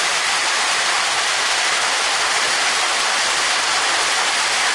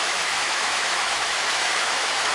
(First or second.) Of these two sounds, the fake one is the second